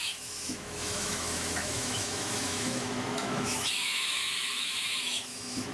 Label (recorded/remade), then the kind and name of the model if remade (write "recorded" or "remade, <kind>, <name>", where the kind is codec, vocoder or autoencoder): remade, autoencoder, DAC-VAE